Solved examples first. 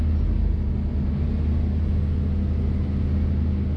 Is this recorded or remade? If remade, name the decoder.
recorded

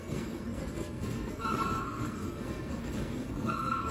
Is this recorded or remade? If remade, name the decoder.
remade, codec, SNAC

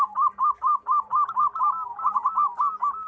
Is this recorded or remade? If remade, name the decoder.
recorded